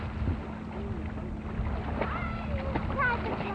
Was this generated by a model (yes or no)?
no